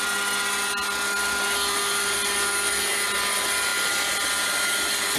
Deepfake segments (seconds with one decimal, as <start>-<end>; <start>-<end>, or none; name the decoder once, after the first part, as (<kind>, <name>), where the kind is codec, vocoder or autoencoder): none